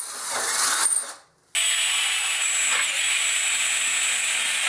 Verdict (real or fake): real